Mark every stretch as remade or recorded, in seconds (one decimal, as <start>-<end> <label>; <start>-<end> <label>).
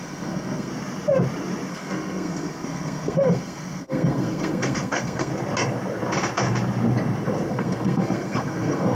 0.0-0.7 remade; 0.7-1.7 recorded; 1.7-5.3 remade; 5.3-7.5 recorded; 7.5-8.9 remade